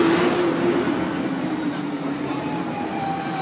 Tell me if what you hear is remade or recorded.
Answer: recorded